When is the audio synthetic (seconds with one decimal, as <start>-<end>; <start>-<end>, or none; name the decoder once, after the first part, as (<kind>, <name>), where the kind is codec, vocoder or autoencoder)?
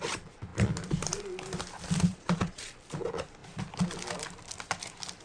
2.1-2.6 (vocoder, Vocos)